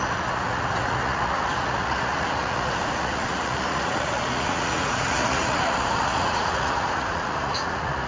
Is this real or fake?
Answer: fake